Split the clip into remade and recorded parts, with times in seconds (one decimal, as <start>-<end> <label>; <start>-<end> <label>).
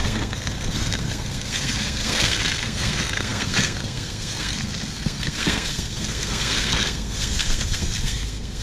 0.0-8.6 remade